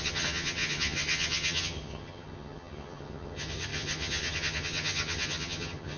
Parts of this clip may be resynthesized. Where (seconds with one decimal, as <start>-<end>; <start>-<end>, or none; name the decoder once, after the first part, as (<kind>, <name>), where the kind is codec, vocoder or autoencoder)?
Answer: 0.0-6.0 (vocoder, HiFi-GAN)